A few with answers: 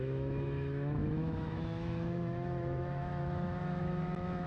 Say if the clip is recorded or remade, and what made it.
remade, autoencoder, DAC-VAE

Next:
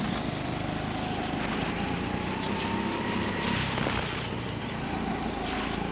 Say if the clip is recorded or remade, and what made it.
recorded